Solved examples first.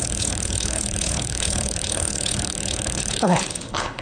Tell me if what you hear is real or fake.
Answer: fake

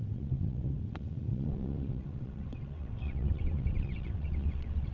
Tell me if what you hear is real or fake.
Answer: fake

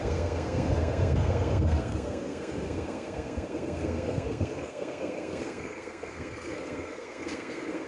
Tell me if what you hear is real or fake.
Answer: fake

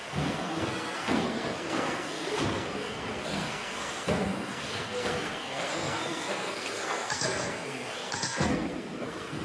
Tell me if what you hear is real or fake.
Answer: fake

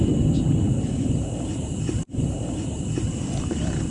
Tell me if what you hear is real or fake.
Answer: real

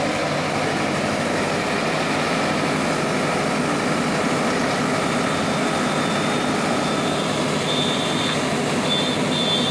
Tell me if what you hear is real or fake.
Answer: real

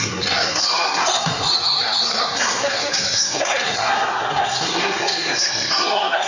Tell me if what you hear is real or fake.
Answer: fake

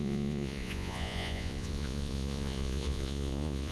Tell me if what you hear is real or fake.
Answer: fake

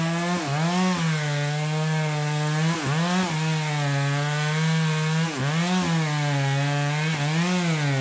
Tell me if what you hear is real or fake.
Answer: real